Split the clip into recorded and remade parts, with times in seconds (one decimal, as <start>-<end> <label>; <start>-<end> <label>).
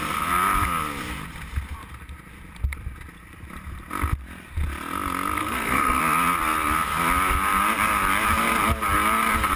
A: 0.0-5.4 recorded; 5.4-6.0 remade; 6.0-9.6 recorded